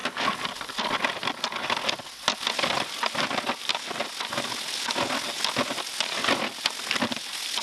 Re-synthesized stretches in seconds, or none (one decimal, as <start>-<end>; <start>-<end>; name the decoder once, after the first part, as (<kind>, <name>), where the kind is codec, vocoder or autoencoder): none